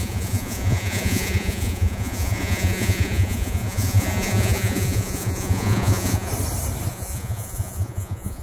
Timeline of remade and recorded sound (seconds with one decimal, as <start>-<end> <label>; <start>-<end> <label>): 0.0-6.3 remade; 6.3-6.9 recorded; 6.9-8.4 remade